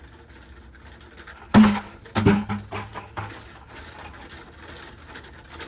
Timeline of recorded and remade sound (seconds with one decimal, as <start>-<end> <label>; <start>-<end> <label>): 0.0-1.3 recorded; 1.3-2.5 remade; 2.5-2.9 recorded; 2.9-3.7 remade; 3.7-5.7 recorded